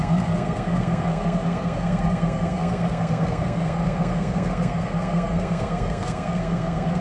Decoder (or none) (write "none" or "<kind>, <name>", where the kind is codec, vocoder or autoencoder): codec, SNAC